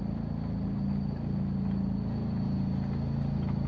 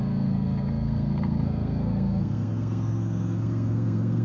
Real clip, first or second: first